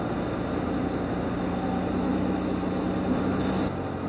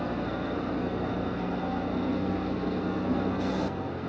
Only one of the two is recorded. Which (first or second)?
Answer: first